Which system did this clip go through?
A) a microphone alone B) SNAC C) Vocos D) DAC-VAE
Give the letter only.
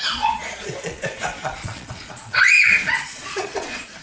C